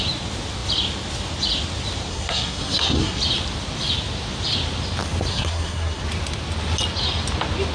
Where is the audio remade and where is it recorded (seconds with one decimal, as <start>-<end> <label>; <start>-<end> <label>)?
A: 0.0-2.1 recorded; 2.1-3.2 remade; 3.2-5.3 recorded; 5.3-6.0 remade; 6.0-7.7 recorded